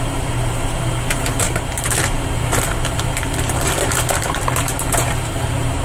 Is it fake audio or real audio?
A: fake